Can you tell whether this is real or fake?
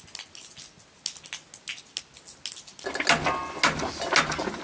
real